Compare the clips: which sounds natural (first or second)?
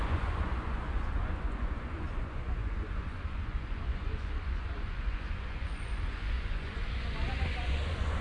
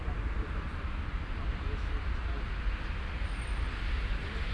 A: second